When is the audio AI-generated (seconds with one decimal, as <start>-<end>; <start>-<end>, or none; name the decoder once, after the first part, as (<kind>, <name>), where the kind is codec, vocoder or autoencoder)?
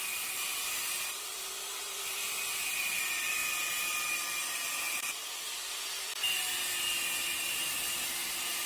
0.0-8.7 (vocoder, BigVGAN v2)